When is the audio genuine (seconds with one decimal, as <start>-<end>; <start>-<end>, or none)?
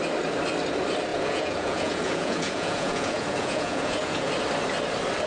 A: 0.0-1.1; 4.3-5.3